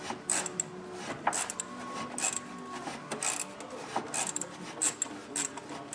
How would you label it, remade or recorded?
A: recorded